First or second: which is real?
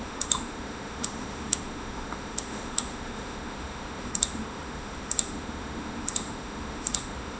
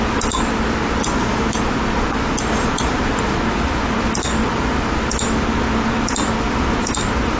second